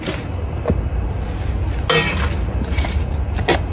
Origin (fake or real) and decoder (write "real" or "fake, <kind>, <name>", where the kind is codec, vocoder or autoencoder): real